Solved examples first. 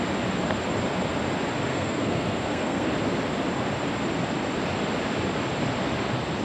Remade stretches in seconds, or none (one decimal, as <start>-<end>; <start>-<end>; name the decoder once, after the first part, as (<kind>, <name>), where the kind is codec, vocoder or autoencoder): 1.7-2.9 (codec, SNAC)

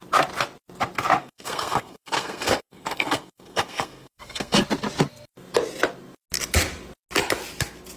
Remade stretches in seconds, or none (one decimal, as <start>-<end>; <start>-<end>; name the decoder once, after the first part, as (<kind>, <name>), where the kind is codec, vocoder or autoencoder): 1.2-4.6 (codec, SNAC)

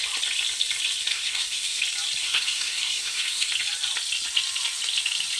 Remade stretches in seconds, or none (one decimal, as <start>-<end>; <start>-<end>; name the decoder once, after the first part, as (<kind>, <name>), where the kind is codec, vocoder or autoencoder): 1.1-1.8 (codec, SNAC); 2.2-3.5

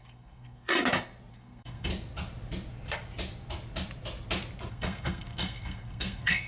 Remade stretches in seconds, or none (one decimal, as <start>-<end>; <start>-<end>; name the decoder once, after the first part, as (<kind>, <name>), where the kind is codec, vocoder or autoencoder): 0.0-0.7 (codec, SNAC); 1.3-1.9; 4.7-6.5

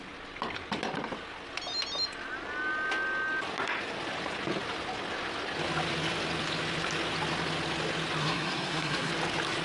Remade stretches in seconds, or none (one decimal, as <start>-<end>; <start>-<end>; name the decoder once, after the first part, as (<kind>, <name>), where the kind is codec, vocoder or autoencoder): 8.2-9.1 (codec, SNAC)

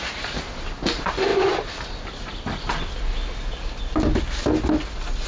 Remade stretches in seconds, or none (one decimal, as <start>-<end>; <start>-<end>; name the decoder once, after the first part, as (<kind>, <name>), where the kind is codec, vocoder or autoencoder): none